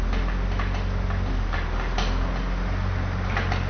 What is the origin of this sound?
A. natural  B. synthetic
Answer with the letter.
A